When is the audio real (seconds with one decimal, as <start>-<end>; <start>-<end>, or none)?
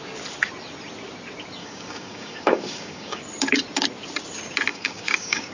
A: 0.0-1.6; 3.2-4.7